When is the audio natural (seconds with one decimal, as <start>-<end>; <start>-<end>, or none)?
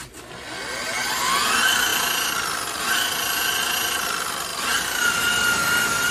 0.0-6.1